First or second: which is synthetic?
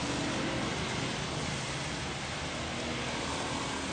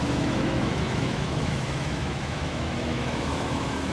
second